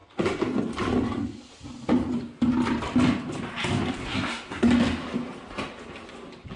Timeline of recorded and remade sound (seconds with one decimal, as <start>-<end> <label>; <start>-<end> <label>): 0.0-4.0 recorded; 4.0-4.7 remade; 4.7-6.6 recorded